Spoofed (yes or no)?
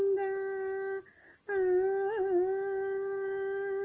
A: no